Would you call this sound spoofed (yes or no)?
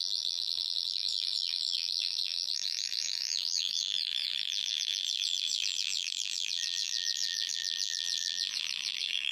yes